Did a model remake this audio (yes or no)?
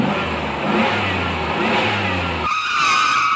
no